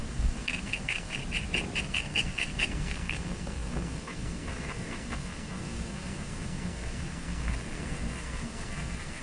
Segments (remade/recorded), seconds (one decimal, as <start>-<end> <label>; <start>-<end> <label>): 0.0-1.2 remade; 1.2-1.8 recorded; 1.8-9.2 remade